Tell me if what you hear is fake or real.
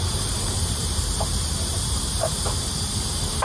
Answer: fake